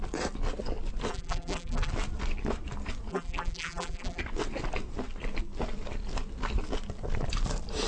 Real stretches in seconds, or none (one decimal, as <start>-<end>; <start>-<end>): 0.0-1.1; 1.9-3.1; 4.2-7.9